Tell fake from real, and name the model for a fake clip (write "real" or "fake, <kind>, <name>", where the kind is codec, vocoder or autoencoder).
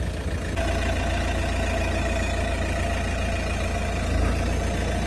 real